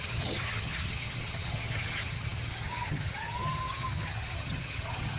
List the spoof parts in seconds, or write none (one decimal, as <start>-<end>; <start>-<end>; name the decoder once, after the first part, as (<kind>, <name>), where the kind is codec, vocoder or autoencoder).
0.0-5.2 (vocoder, HiFi-GAN)